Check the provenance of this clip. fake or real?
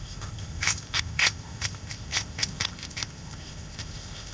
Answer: fake